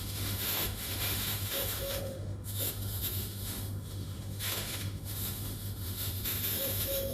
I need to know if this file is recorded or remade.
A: remade